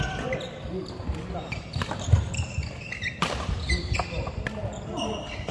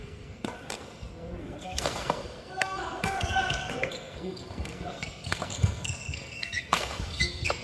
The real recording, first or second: first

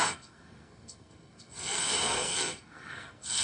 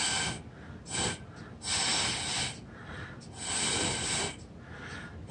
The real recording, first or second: second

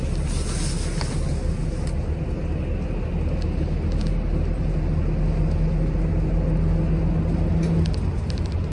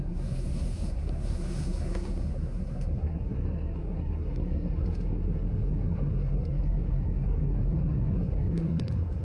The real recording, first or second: first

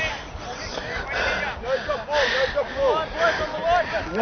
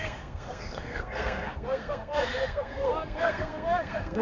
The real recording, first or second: first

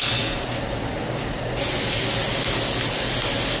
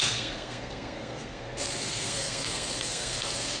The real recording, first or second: first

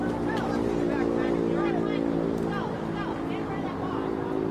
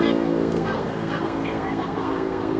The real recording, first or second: first